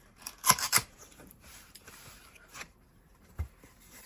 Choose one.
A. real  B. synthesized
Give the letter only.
B